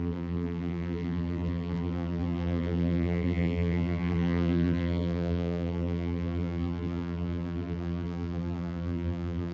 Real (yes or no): no